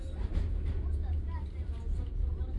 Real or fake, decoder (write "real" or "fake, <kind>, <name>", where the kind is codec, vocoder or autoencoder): real